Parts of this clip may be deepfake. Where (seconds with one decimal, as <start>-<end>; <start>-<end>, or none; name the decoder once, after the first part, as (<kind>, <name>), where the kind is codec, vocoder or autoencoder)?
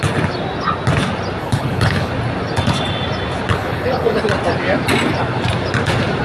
1.4-2.1 (codec, HILCodec); 3.5-4.2